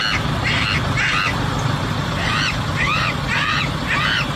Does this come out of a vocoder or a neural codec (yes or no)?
no